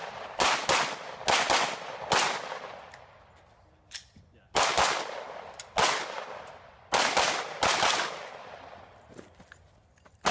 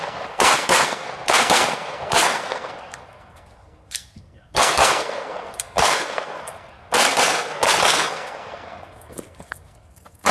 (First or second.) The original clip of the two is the first